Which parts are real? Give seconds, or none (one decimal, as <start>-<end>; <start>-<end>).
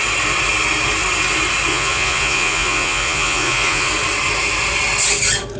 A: 0.0-1.7; 3.9-5.6